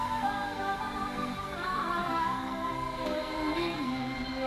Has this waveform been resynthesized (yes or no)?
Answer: yes